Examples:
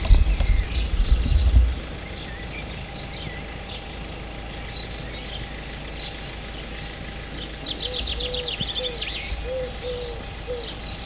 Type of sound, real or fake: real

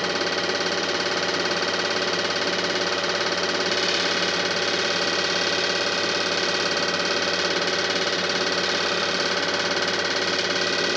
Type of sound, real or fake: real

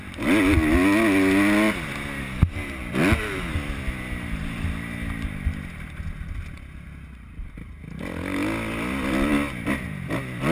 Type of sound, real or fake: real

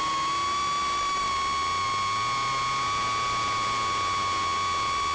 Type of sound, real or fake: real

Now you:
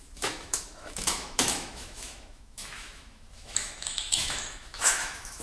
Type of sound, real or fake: fake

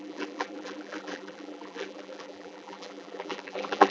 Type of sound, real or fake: fake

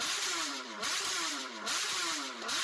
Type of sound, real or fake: fake